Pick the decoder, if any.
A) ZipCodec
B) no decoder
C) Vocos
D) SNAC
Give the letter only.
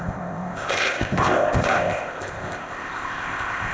A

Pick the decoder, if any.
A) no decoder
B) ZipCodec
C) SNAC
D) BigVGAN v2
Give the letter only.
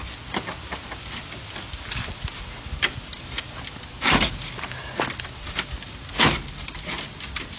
A